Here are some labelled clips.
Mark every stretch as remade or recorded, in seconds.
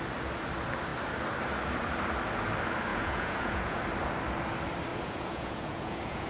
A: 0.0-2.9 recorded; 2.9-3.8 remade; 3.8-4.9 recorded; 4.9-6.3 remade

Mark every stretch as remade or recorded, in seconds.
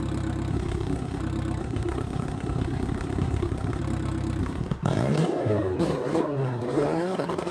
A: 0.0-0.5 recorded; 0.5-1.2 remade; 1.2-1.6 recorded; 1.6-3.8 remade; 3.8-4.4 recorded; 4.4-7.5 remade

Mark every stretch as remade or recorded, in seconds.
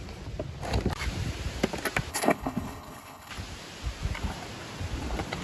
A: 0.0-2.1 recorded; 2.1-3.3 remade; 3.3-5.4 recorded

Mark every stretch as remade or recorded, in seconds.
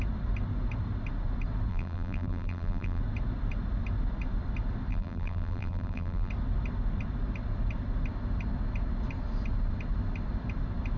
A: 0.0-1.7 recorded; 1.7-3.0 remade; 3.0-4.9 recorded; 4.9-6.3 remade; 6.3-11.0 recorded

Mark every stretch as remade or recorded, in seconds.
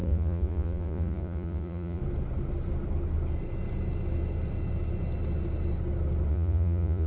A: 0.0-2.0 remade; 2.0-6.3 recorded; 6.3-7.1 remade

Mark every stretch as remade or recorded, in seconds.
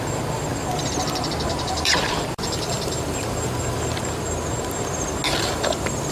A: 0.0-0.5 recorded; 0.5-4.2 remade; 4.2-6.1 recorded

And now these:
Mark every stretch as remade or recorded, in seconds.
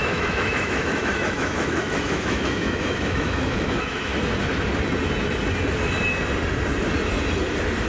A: 0.0-4.1 remade; 4.1-7.9 recorded